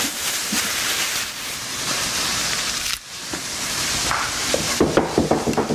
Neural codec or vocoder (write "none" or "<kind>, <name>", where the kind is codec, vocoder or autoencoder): vocoder, BigVGAN v2